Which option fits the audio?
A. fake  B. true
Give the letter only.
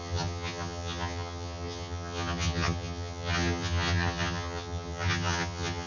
A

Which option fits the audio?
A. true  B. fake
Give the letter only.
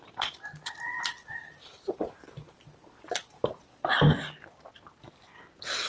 A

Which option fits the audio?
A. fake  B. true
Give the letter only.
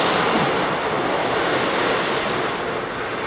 B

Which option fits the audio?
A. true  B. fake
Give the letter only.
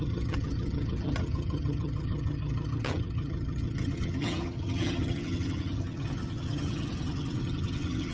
B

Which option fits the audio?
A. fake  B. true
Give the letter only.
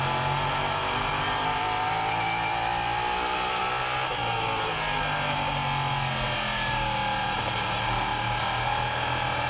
B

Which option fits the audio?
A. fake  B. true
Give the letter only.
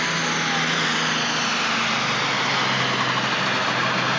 B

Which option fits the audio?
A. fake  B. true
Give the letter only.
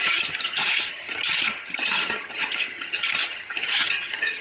A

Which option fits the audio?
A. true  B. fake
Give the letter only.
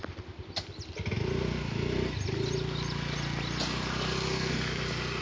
A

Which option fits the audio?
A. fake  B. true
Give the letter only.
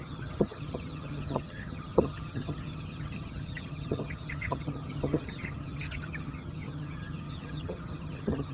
A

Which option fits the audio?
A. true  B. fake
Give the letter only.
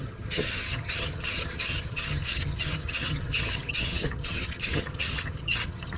B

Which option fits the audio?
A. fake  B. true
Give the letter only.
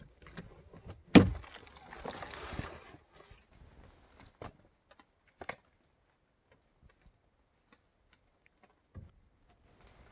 B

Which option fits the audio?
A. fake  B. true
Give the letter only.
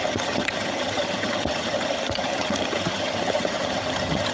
A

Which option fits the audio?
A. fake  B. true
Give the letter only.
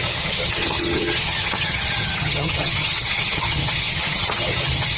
A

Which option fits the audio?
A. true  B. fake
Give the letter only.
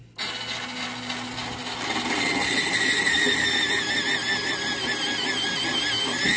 A